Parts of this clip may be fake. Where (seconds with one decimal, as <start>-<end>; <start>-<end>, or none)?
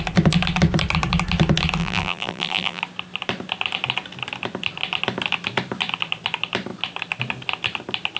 1.8-2.8